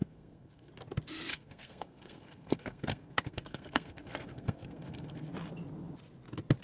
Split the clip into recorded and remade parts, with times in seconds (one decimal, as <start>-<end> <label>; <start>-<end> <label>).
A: 0.0-0.7 remade; 0.7-1.3 recorded; 1.3-5.3 remade; 5.3-6.6 recorded